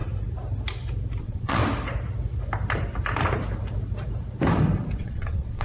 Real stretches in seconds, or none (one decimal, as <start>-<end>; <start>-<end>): 0.0-1.2; 1.6-5.0